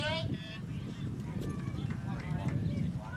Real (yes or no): no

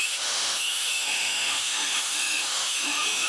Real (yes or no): no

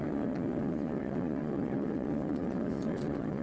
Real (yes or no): no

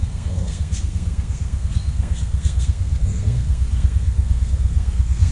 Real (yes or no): no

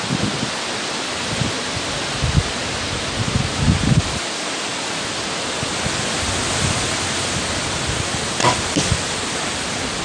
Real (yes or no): yes